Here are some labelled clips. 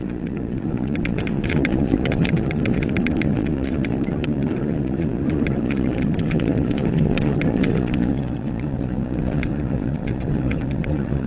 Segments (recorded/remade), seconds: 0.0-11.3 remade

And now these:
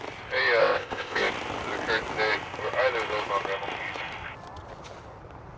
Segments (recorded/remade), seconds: 0.0-0.6 recorded; 0.6-1.3 remade; 1.3-5.6 recorded

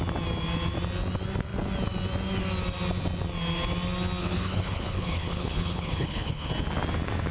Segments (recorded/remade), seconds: 0.0-4.2 recorded; 4.2-6.5 remade; 6.5-7.3 recorded

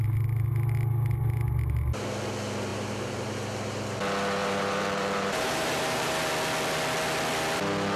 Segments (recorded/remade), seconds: 0.0-2.7 recorded; 2.7-3.3 remade; 3.3-4.4 recorded; 4.4-6.3 remade; 6.3-8.0 recorded

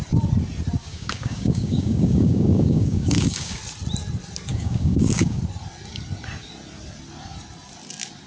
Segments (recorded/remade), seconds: 0.0-0.8 recorded; 0.8-3.6 remade; 3.6-4.5 recorded; 4.5-5.4 remade; 5.4-8.3 recorded

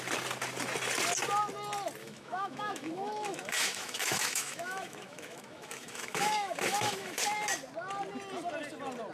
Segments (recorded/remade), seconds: 0.0-2.0 recorded; 2.0-7.2 remade; 7.2-9.1 recorded

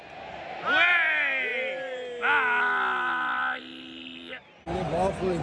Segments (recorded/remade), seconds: 0.0-5.4 recorded